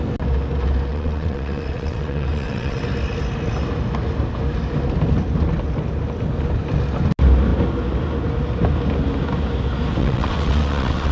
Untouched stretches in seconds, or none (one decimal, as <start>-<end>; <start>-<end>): 0.0-0.9; 2.8-10.0